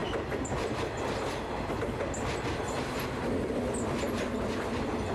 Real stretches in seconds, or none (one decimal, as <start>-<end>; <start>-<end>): 0.0-5.1